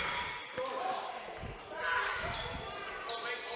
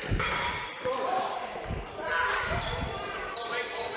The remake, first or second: second